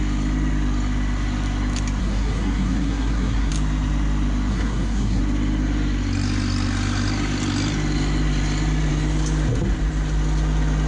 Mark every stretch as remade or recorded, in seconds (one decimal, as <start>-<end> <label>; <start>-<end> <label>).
0.0-2.0 recorded; 2.0-3.5 remade; 3.5-4.5 recorded; 4.5-5.2 remade; 5.2-10.9 recorded